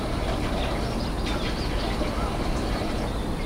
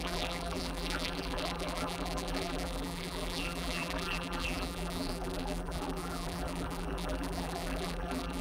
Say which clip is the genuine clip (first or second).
first